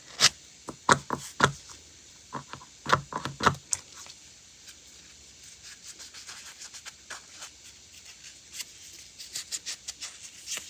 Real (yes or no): yes